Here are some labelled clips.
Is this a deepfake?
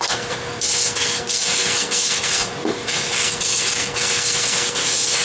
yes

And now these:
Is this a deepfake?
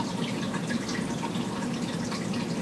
no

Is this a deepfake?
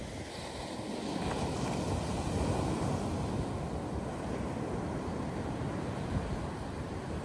no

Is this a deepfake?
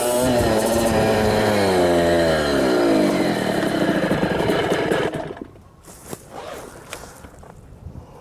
no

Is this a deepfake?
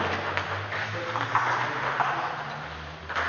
no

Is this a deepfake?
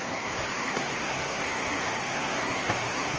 yes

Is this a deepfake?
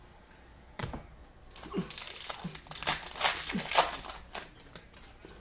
no